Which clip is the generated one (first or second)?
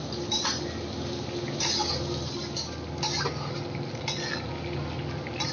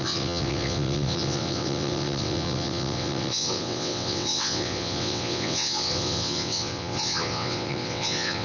second